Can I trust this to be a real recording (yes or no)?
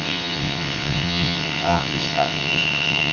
no